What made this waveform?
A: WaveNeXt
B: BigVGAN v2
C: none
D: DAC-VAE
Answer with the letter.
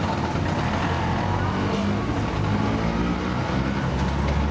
C